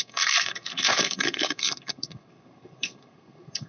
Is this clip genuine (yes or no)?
no